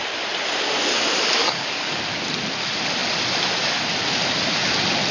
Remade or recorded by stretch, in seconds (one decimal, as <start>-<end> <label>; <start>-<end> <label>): 0.0-1.4 recorded; 1.4-2.0 remade; 2.0-5.1 recorded